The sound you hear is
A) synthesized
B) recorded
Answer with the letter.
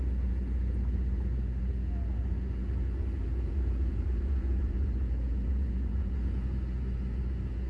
A